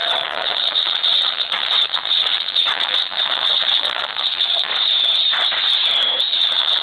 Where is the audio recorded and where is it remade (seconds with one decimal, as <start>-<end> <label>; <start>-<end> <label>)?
0.0-4.7 remade; 4.7-6.3 recorded; 6.3-6.8 remade